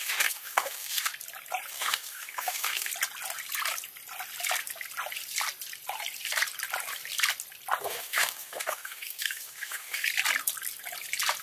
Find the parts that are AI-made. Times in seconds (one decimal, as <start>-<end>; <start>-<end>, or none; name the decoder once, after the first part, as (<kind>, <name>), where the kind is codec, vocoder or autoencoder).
0.0-1.1 (codec, DAC); 1.7-2.9; 7.8-10.1